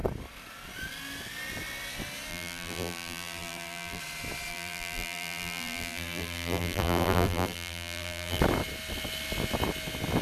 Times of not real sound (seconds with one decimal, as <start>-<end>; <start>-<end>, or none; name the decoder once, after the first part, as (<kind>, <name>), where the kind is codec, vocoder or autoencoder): 2.3-4.0 (vocoder, BigVGAN v2); 4.5-8.4